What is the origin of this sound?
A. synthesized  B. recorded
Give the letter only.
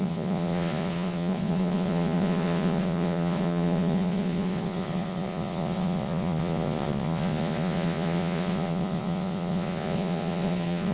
A